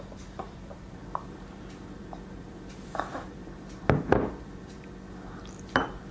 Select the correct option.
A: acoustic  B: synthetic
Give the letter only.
B